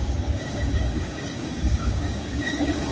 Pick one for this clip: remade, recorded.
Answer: remade